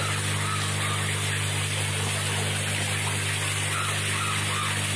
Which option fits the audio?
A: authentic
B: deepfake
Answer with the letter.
A